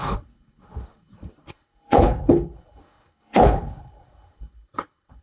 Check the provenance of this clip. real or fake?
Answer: fake